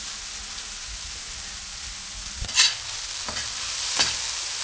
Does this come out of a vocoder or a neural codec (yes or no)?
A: no